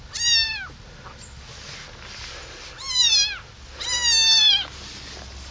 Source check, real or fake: real